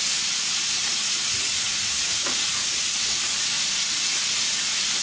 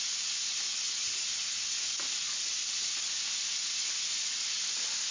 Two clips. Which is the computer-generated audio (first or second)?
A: first